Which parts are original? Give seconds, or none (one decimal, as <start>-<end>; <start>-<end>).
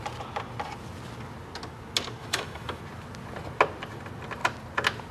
0.0-2.2; 2.8-5.1